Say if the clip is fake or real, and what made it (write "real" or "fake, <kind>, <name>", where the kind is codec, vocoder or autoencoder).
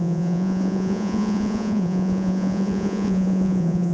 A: fake, vocoder, Vocos